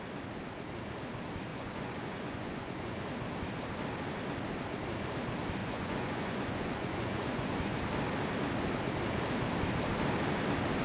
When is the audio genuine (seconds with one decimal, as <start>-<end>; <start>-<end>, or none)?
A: 0.0-1.5; 3.1-5.6; 7.8-10.8